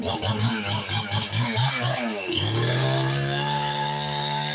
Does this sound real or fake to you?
fake